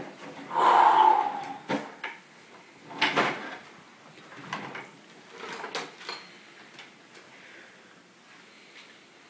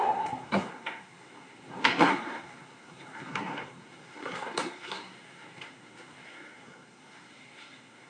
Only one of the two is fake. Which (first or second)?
second